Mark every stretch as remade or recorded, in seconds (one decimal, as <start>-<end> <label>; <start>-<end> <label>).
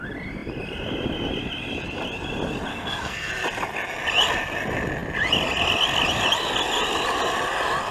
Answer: 0.0-2.7 recorded; 2.7-3.3 remade; 3.3-7.9 recorded